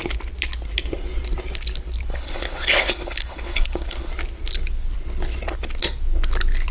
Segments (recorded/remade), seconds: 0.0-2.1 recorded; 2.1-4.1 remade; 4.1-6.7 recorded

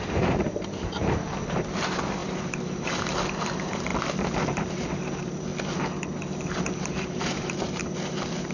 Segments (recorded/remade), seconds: 0.0-3.9 remade; 3.9-4.5 recorded; 4.5-5.5 remade; 5.5-6.8 recorded; 6.8-8.5 remade

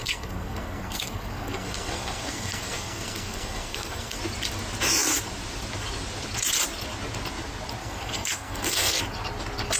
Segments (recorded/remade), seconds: 0.0-4.2 remade; 4.2-7.8 recorded; 7.8-9.0 remade; 9.0-9.8 recorded

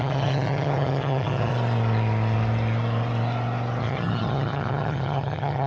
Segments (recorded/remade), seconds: 0.0-1.5 remade; 1.5-3.8 recorded; 3.8-5.7 remade

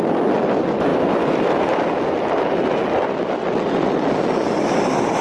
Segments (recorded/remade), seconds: 0.0-5.2 recorded

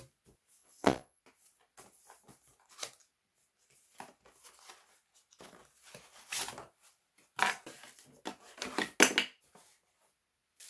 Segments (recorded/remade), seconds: 0.0-0.6 recorded; 0.6-1.2 remade; 1.2-10.7 recorded

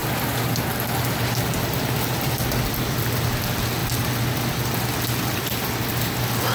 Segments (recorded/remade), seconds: 0.0-6.5 recorded

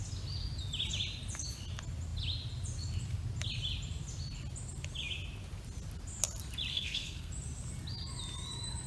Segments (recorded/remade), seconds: 0.0-6.7 recorded; 6.7-7.3 remade; 7.3-8.9 recorded